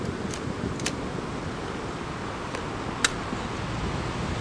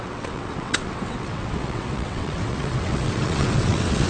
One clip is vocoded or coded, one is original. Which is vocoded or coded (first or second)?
second